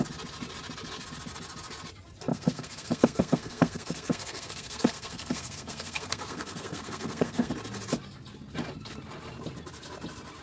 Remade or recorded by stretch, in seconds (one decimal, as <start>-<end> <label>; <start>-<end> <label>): 0.0-2.3 recorded; 2.3-7.5 remade; 7.5-10.4 recorded